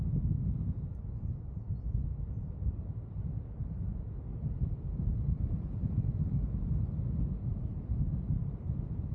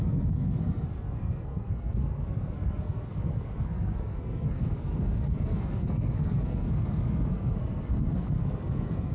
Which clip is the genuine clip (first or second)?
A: first